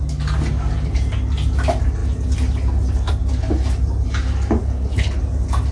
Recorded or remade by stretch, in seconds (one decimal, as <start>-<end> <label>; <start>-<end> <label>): 0.0-4.6 recorded; 4.6-5.2 remade; 5.2-5.7 recorded